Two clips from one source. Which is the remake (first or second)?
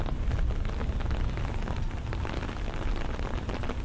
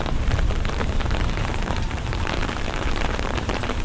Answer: second